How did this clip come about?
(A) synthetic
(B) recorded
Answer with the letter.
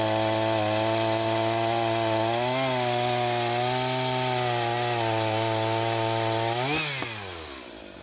B